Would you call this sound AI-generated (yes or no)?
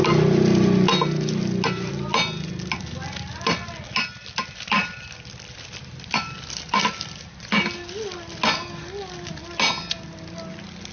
no